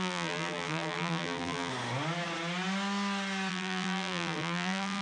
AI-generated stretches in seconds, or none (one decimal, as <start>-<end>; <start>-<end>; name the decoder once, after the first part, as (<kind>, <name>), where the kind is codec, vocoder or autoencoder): 0.0-1.7 (vocoder, BigVGAN v2); 3.5-5.0